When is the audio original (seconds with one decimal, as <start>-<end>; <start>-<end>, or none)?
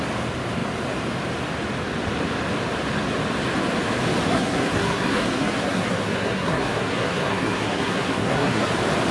0.0-4.3; 8.7-9.1